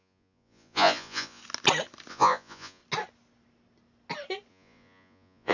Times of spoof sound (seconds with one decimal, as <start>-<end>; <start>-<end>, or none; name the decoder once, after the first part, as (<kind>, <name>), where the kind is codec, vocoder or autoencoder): 0.0-1.4 (vocoder, Vocos); 2.1-2.8; 4.5-5.5